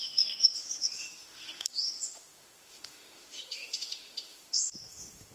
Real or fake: fake